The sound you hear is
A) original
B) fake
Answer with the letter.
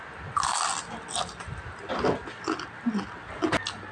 A